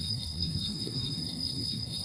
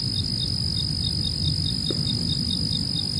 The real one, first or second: second